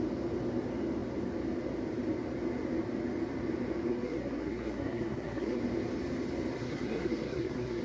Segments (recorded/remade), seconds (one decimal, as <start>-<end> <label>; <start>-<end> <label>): 0.0-3.9 recorded; 3.9-5.6 remade; 5.6-6.6 recorded; 6.6-7.8 remade